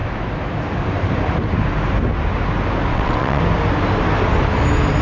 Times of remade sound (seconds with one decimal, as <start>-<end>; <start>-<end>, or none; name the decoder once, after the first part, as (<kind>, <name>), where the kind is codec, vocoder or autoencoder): 2.9-3.4 (vocoder, WaveNeXt)